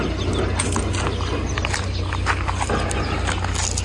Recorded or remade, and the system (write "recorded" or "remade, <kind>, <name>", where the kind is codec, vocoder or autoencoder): recorded